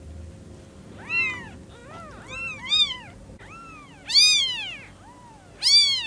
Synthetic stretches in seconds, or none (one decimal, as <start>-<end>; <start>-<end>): none